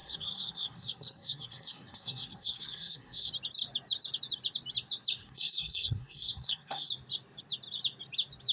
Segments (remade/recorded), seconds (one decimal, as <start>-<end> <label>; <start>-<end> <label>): 0.0-3.3 remade; 3.3-5.2 recorded; 5.2-6.9 remade; 6.9-8.5 recorded